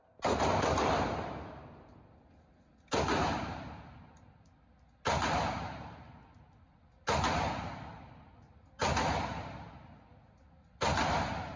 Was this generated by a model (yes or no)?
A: no